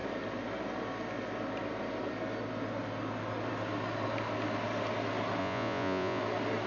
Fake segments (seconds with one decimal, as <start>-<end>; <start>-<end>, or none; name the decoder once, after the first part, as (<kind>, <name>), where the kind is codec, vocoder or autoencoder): 5.4-6.2 (vocoder, Vocos)